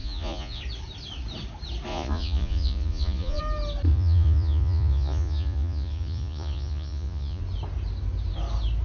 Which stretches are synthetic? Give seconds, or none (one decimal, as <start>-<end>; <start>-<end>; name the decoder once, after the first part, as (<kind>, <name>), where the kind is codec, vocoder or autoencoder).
0.0-0.6 (vocoder, Vocos); 1.9-3.4; 3.9-7.4